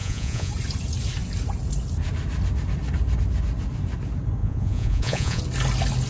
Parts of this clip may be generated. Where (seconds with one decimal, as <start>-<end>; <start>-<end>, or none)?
0.0-0.5; 4.4-5.4